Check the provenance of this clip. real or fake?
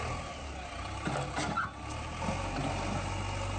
real